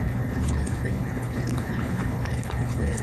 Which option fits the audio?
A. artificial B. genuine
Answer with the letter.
A